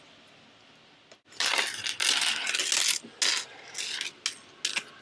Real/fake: real